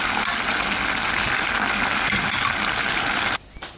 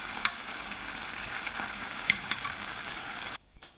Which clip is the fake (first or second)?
second